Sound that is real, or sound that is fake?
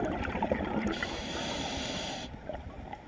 fake